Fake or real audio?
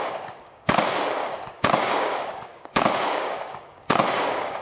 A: fake